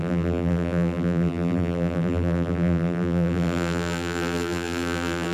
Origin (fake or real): fake